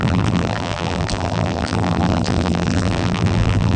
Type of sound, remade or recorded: remade